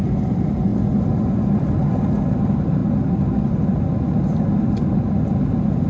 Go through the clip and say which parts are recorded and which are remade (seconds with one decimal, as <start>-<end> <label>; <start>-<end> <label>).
0.0-5.9 recorded